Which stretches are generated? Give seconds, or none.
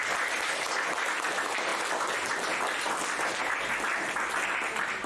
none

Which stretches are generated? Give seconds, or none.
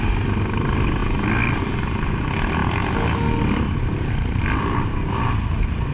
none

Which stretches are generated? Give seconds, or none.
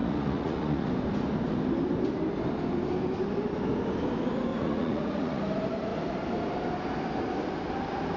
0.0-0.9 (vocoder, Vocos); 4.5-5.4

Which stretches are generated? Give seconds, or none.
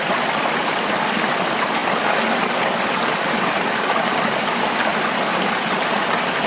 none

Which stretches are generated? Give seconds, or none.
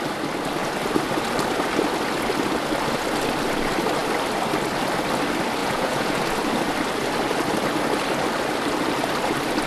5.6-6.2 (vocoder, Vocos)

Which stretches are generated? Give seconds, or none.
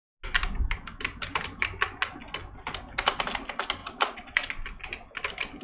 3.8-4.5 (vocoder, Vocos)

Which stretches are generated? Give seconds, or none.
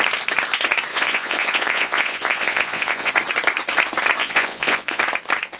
0.9-3.1 (vocoder, Vocos); 4.2-5.0